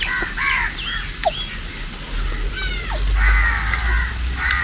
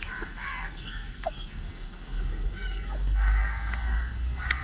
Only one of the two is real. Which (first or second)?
first